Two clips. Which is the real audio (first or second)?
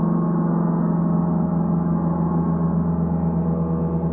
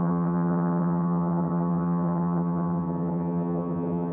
first